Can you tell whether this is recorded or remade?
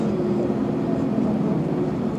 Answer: remade